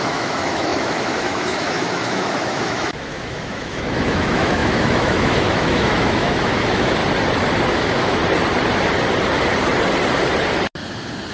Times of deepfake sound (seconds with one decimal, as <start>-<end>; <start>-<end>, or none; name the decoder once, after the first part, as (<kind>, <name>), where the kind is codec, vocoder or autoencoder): 0.0-7.0 (autoencoder, DAC-VAE); 7.7-8.2